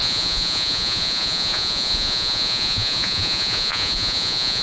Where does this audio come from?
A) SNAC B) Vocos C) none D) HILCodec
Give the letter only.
B